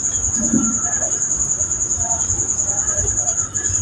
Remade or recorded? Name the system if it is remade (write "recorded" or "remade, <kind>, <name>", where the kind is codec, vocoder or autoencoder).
recorded